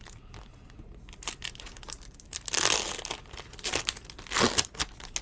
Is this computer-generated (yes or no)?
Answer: no